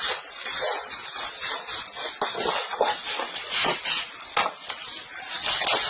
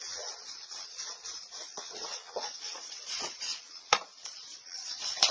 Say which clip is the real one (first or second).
first